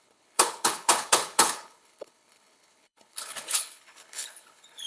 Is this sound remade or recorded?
remade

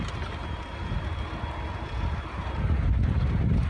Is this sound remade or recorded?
recorded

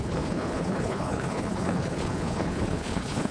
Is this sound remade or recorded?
remade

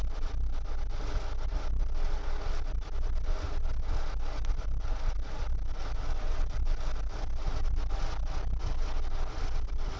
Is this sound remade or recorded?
recorded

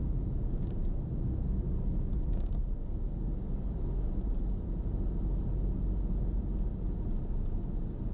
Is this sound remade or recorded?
recorded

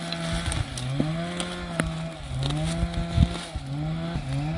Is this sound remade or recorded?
recorded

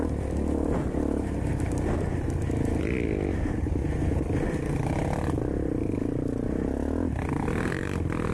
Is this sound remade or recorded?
recorded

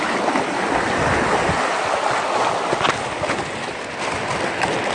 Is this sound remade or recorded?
recorded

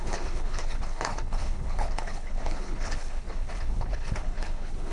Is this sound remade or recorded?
remade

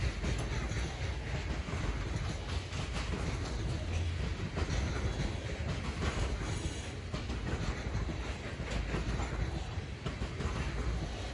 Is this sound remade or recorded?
recorded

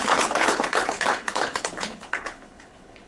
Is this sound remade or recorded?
remade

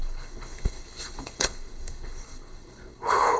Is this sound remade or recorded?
remade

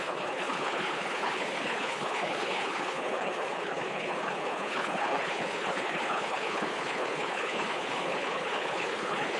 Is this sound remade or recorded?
remade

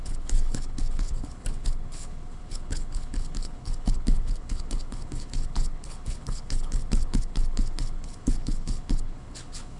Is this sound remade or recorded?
remade